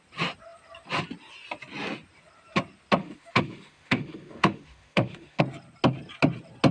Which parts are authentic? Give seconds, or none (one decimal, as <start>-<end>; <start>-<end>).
0.0-3.0; 5.4-6.7